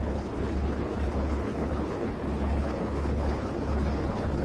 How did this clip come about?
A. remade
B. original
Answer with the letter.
A